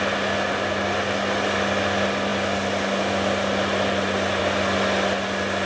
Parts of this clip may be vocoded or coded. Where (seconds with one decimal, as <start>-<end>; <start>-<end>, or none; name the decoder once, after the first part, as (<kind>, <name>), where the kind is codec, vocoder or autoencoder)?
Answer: none